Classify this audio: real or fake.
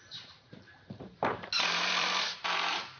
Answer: fake